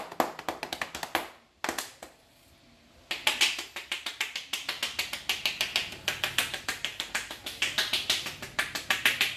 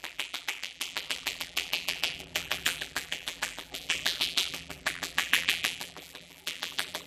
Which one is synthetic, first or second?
second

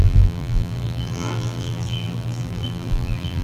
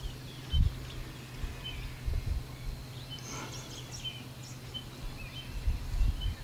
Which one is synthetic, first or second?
first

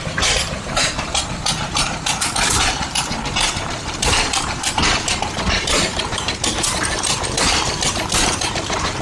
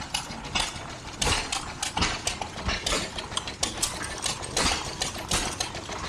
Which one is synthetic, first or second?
first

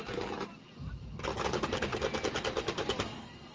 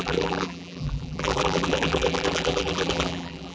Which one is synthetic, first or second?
second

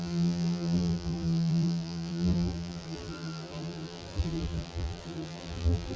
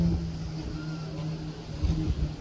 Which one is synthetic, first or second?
first